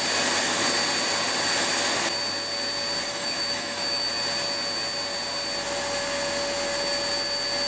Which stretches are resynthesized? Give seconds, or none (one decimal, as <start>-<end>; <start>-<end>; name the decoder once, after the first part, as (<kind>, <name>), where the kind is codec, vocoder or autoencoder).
3.1-4.1 (autoencoder, DAC-VAE)